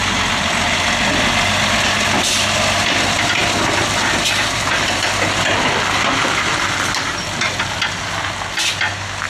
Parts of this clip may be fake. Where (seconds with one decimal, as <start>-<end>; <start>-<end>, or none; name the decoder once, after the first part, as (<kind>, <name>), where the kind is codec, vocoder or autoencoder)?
none